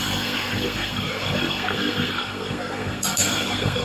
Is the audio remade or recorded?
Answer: remade